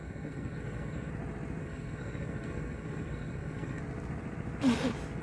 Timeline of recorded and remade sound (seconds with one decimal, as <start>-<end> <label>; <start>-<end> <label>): 0.0-1.1 remade; 1.1-1.6 recorded; 1.6-3.8 remade; 3.8-5.2 recorded